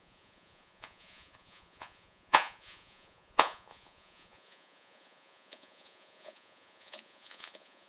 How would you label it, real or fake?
fake